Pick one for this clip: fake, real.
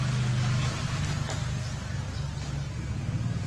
real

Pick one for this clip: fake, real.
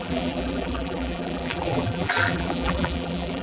fake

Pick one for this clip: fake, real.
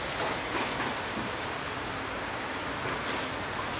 real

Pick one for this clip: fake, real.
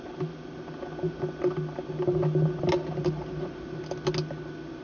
real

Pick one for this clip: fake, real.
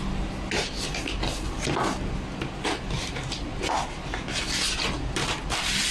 real